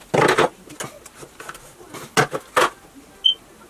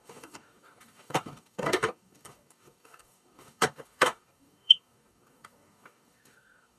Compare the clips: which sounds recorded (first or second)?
first